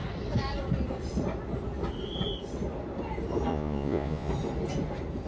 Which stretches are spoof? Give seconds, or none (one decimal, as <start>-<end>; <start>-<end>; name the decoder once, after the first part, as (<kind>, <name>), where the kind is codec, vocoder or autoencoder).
3.5-4.3 (vocoder, Vocos)